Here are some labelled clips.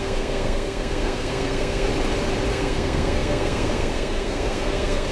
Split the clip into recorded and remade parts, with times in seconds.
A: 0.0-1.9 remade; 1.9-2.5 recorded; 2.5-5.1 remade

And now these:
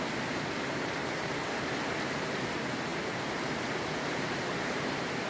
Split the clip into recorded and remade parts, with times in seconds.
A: 0.0-5.3 remade

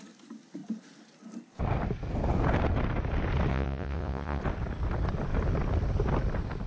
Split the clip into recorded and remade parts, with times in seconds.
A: 0.0-3.5 recorded; 3.5-4.4 remade; 4.4-6.7 recorded

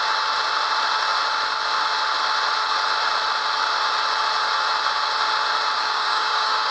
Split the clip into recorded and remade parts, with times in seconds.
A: 0.0-5.8 recorded; 5.8-6.7 remade

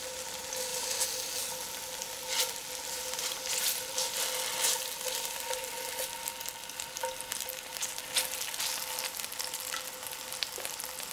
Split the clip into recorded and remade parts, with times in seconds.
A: 0.0-11.1 recorded

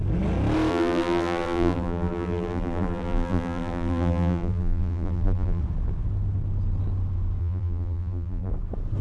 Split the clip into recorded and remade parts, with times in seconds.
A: 0.0-0.7 recorded; 0.7-5.6 remade; 5.6-7.4 recorded; 7.4-8.5 remade; 8.5-9.0 recorded

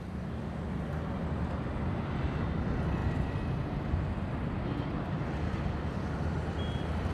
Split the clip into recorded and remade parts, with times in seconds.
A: 0.0-7.1 recorded